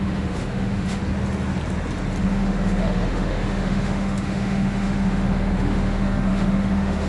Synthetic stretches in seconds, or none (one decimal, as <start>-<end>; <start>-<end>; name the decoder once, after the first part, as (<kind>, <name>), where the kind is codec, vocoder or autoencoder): 0.0-1.0 (autoencoder, DAC-VAE); 2.2-7.1